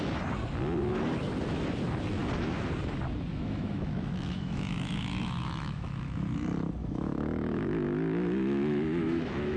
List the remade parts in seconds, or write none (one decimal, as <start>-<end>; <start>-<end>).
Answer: 3.3-6.2; 6.8-9.6